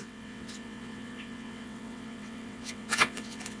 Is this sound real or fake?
fake